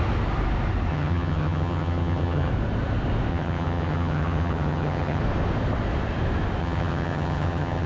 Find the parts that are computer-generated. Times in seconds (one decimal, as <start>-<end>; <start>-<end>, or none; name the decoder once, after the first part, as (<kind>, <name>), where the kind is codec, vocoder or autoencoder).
0.9-2.5 (vocoder, HiFi-GAN); 3.3-5.2; 6.6-7.9